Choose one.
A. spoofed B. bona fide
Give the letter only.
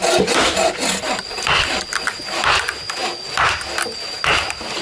B